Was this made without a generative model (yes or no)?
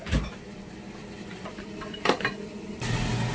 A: yes